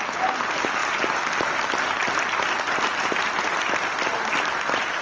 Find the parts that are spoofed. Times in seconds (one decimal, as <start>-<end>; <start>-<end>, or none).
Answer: none